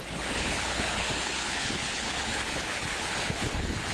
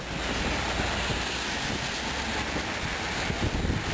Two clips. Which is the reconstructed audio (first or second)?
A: first